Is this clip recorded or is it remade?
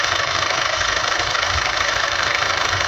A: remade